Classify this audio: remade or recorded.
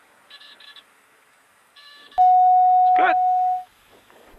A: remade